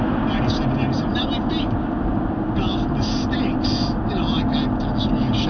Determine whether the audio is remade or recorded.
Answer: recorded